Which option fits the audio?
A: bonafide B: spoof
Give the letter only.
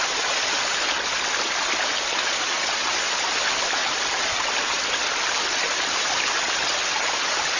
A